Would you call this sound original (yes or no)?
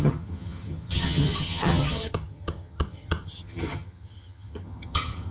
no